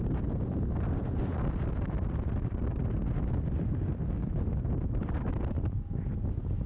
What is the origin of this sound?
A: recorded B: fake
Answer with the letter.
A